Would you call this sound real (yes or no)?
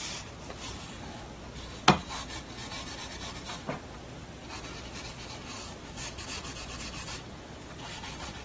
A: yes